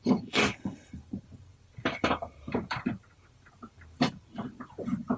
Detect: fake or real fake